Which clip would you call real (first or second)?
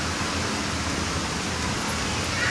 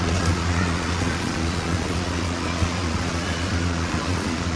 first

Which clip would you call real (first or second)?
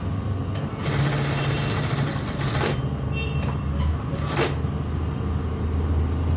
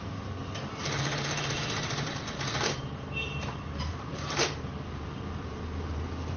first